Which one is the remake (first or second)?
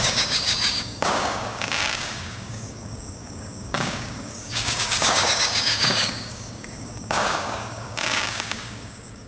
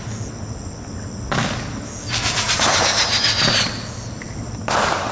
first